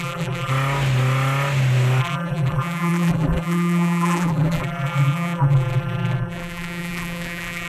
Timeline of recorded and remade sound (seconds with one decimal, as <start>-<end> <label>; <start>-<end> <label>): 0.0-0.5 remade; 0.5-2.0 recorded; 2.0-7.7 remade